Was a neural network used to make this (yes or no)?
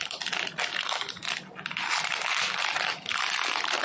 no